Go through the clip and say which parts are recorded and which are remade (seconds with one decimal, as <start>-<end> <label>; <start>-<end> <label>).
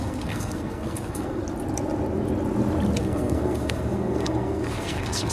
0.0-1.4 remade; 1.4-3.0 recorded; 3.0-5.3 remade